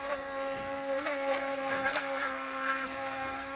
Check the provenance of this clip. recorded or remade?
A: remade